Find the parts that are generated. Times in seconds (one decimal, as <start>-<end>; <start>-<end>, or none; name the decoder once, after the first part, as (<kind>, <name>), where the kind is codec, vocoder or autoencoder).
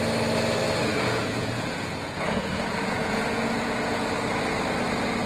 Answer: 0.9-4.1 (vocoder, Vocos)